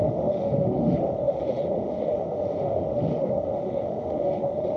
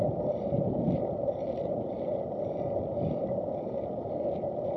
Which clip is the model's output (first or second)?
first